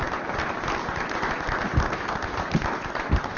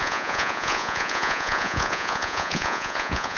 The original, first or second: first